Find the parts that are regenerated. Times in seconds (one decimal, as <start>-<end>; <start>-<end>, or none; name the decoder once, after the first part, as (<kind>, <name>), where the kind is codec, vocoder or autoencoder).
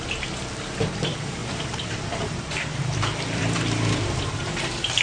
0.0-5.0 (vocoder, BigVGAN v2)